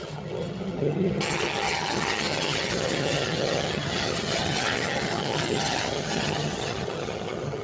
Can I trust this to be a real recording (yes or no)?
no